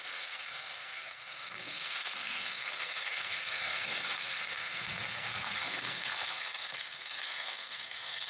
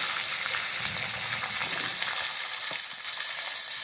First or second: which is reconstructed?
first